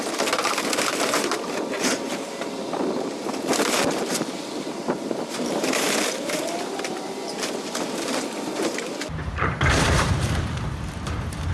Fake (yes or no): yes